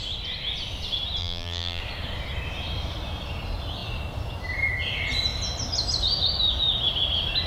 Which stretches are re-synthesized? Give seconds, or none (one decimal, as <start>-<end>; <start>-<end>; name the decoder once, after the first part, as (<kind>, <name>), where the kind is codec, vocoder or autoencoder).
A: 1.2-1.8 (vocoder, BigVGAN v2)